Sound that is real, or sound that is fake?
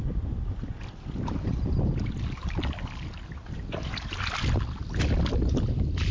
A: real